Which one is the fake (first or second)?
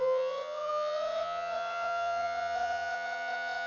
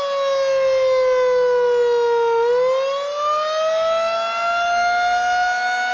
first